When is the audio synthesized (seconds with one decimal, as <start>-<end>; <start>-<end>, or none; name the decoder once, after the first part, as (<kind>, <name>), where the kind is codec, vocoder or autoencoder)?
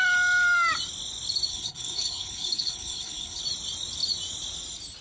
1.5-3.4 (codec, HILCodec)